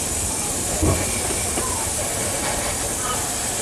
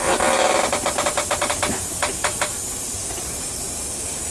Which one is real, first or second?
second